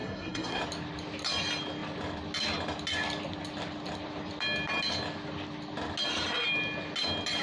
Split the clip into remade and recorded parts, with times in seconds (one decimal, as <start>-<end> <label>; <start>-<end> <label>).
0.0-0.6 remade; 0.6-7.4 recorded